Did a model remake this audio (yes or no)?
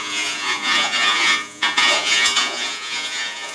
yes